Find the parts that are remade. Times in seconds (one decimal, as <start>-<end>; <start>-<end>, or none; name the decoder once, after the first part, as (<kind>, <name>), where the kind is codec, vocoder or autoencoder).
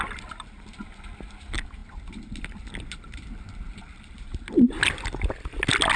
none